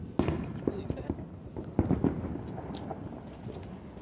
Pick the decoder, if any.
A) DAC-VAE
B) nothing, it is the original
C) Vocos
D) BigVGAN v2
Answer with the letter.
B